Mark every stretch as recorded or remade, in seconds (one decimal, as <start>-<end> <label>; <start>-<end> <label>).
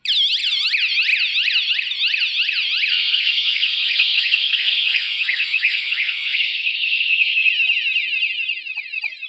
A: 0.0-2.9 recorded; 2.9-7.5 remade; 7.5-9.3 recorded